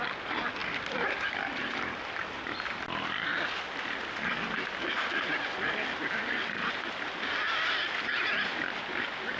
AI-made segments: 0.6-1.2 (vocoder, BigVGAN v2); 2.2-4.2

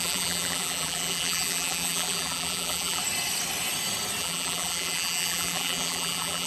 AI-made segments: 0.0-3.0 (vocoder, BigVGAN v2); 4.2-6.5